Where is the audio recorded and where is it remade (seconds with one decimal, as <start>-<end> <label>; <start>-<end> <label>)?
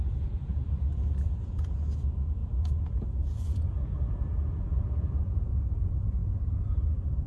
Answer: 0.0-0.5 remade; 0.5-1.3 recorded; 1.3-7.3 remade